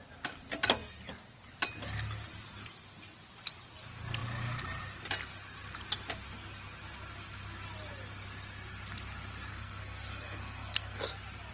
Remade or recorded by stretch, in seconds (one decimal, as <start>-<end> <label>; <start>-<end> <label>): 0.0-9.5 recorded; 9.5-11.0 remade; 11.0-11.5 recorded